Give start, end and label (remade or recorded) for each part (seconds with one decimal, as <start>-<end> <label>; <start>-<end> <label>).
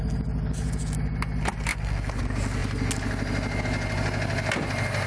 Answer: 0.0-5.1 recorded